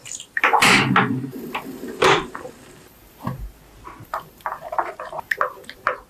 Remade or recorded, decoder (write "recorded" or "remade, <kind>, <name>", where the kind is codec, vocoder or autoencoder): remade, vocoder, BigVGAN v2